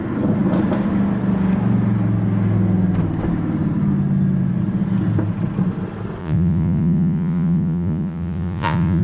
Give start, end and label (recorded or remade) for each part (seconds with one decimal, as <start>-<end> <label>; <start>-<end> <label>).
0.0-6.2 recorded; 6.2-9.0 remade